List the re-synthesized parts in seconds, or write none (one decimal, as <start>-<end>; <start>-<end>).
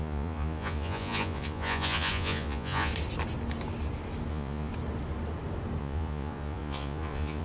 0.0-2.9; 4.3-4.7; 5.8-7.4